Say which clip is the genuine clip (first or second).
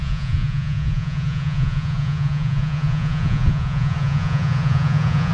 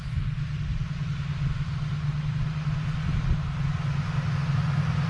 second